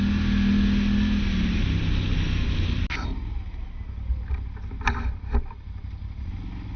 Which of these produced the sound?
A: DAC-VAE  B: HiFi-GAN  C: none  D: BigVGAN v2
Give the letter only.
C